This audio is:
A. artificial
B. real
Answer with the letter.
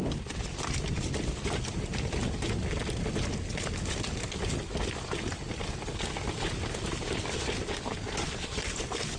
B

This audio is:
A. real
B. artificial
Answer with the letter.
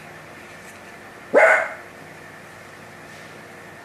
A